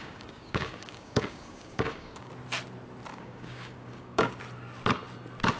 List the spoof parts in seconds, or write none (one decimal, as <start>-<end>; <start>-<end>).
0.0-2.3; 3.1-4.4